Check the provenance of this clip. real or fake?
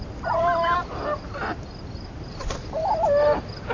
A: real